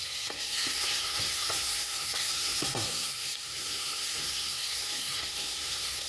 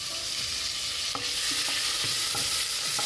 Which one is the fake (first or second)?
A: first